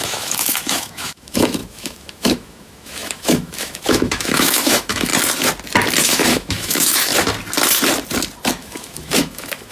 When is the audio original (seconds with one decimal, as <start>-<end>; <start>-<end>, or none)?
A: 5.1-6.0; 7.1-8.5